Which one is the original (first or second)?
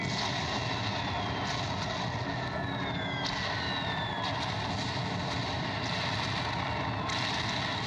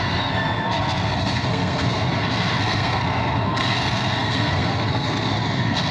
first